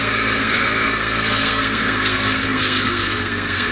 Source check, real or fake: fake